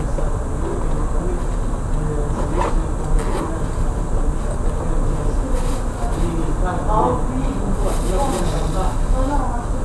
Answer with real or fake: real